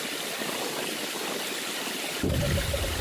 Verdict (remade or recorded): recorded